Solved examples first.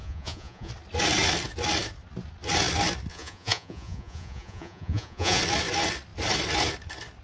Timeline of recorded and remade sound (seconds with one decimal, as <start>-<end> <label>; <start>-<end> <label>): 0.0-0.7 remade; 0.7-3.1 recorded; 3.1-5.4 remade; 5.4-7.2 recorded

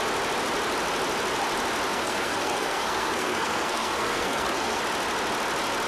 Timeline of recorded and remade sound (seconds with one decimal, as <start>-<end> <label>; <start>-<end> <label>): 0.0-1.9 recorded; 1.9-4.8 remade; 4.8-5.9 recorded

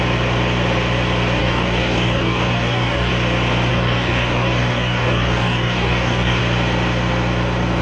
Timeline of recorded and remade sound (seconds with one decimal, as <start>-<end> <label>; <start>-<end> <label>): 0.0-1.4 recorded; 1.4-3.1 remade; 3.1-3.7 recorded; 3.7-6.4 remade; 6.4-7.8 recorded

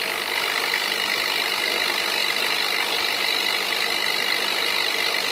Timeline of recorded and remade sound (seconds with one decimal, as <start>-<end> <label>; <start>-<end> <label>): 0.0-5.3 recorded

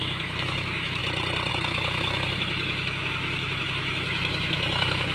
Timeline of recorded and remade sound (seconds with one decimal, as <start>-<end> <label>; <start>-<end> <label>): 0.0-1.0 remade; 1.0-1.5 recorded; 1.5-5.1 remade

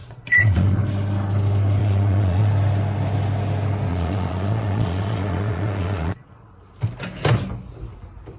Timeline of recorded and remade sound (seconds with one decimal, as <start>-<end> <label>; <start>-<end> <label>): 0.0-0.8 remade; 0.8-1.8 recorded; 1.8-2.5 remade; 2.5-3.9 recorded; 3.9-6.5 remade; 6.5-8.4 recorded

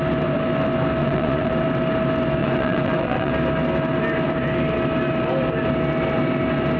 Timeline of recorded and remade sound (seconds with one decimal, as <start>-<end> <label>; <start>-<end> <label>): 0.0-1.0 recorded; 1.0-1.5 remade; 1.5-2.4 recorded; 2.4-3.3 remade; 3.3-6.8 recorded

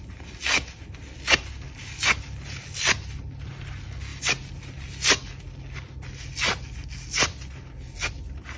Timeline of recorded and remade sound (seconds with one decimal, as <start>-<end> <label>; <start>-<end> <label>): 0.0-8.6 recorded